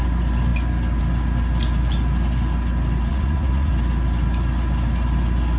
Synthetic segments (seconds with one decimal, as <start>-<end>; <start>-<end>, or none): 3.1-3.7